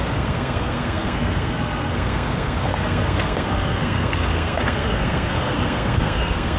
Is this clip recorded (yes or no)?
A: no